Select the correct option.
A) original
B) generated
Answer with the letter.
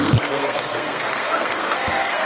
B